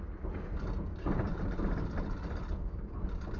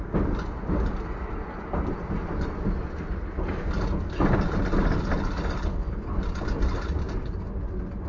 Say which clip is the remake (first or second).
first